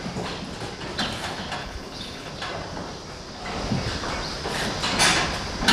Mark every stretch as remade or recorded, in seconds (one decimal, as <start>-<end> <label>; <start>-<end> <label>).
0.0-1.6 recorded; 1.6-2.3 remade; 2.3-5.7 recorded